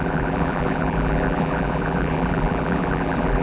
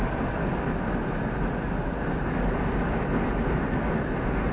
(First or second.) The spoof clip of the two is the first